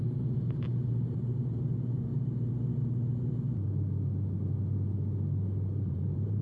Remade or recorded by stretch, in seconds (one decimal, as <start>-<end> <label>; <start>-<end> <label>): 0.0-2.1 remade; 2.1-5.9 recorded; 5.9-6.4 remade